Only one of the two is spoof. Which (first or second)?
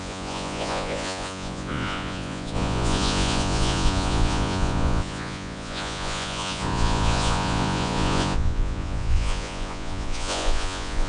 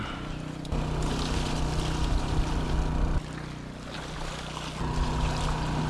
first